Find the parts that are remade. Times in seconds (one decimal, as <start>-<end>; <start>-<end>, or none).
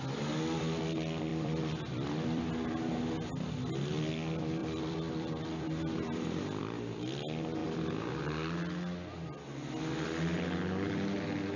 1.3-2.4; 4.6-6.6